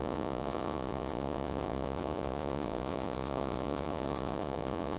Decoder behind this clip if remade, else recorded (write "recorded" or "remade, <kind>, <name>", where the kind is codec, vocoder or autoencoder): remade, vocoder, Vocos